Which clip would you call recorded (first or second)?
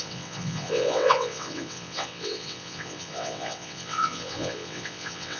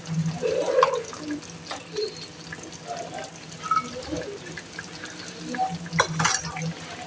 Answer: second